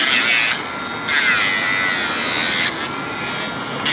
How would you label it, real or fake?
real